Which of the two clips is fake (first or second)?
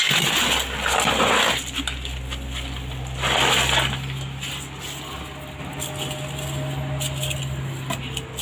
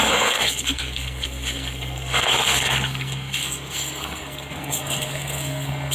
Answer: second